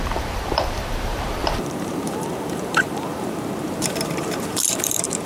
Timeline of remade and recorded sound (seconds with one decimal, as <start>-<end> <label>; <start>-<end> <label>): 0.0-5.3 remade